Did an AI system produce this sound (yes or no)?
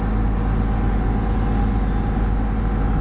no